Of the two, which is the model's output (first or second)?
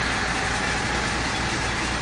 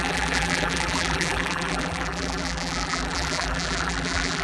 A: second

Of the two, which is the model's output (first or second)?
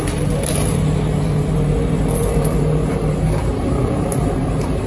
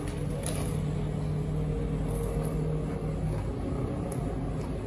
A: first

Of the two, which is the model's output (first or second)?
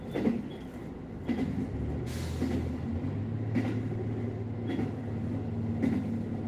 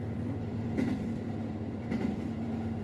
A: second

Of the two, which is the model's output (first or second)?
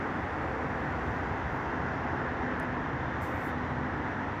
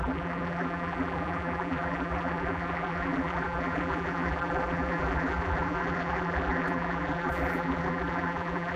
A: second